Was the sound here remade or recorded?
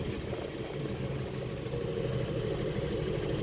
recorded